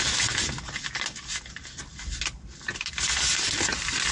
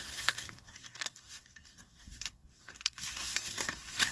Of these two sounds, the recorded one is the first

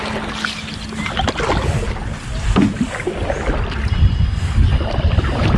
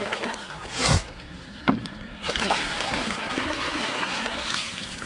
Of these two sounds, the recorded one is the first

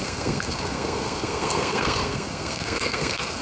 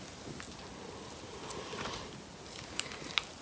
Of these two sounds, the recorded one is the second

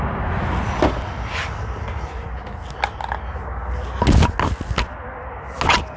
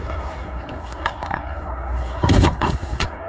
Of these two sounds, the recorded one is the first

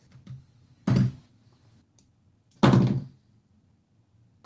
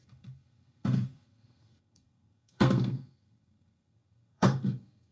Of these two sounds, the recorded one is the first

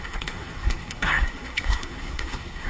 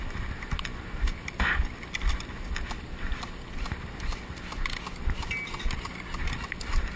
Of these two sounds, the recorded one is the second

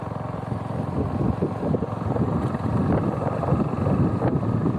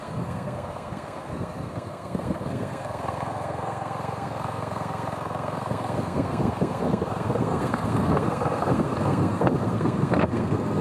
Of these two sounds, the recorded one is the first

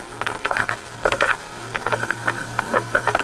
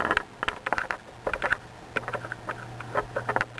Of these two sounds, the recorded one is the second